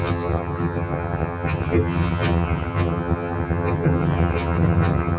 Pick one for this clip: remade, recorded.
remade